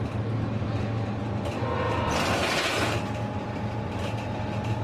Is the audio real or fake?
real